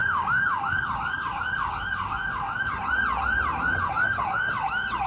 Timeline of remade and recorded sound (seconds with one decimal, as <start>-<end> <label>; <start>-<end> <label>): 0.0-2.8 remade; 2.8-3.9 recorded; 3.9-5.1 remade